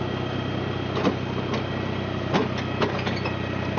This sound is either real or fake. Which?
real